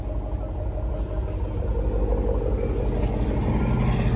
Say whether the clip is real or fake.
real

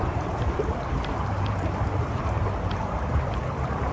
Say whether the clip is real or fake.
fake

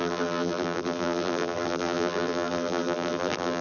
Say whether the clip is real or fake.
fake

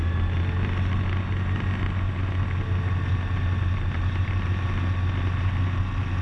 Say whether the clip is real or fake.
real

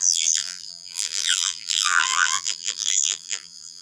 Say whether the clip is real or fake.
fake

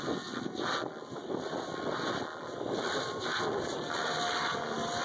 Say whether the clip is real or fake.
real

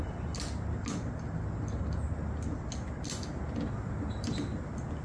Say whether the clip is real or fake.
real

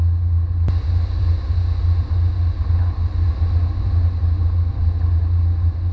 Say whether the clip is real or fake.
real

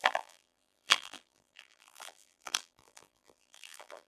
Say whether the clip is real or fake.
fake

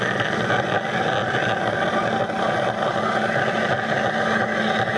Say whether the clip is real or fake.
real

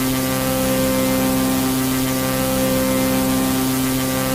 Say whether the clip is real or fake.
real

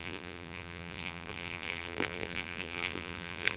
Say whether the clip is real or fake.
fake